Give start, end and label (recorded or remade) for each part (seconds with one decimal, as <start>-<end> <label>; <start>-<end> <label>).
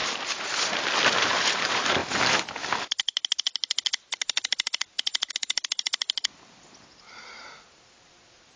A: 0.0-8.6 recorded